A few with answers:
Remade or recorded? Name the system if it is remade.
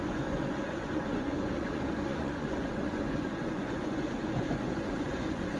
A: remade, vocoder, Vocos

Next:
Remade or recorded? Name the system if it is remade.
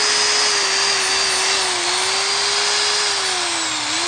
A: recorded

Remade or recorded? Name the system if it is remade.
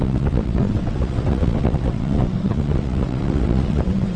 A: remade, vocoder, WaveNeXt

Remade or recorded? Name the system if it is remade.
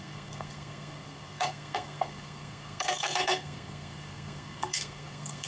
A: remade, codec, SNAC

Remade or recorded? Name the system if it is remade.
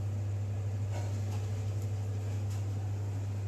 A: recorded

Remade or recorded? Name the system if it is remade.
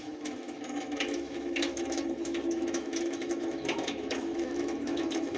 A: remade, autoencoder, DAC-VAE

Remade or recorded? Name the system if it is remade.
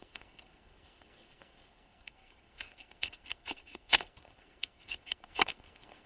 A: remade, codec, SNAC